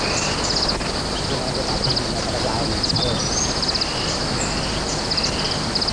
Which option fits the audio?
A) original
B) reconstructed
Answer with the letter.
A